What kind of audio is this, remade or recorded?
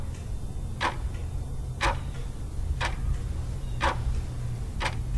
recorded